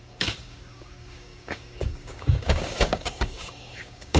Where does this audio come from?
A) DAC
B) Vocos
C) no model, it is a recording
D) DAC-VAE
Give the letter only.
A